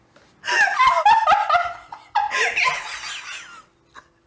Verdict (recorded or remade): recorded